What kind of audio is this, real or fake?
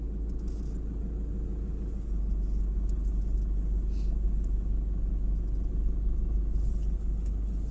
real